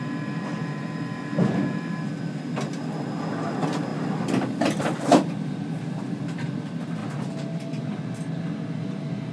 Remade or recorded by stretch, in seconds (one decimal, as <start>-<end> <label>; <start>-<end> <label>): 0.0-3.9 recorded; 3.9-6.5 remade; 6.5-7.0 recorded; 7.0-7.8 remade; 7.8-9.3 recorded